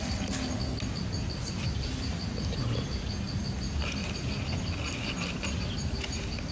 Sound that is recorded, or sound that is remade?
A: recorded